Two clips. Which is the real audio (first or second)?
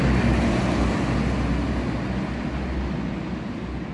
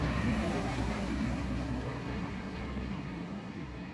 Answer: first